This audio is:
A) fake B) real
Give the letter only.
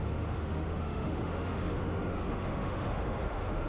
A